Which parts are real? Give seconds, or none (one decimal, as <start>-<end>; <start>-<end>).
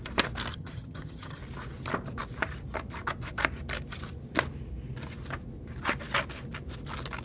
0.0-0.5; 1.4-7.2